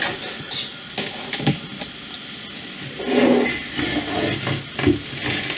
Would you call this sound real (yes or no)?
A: yes